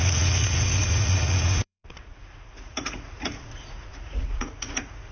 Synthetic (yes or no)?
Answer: yes